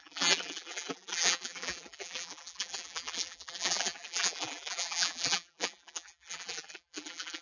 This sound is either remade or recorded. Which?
remade